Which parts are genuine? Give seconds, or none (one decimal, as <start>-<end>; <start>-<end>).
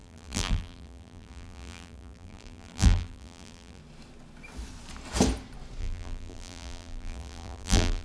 3.8-5.8